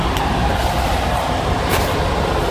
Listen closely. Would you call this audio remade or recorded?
recorded